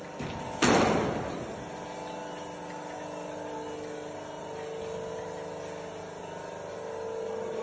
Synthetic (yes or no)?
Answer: no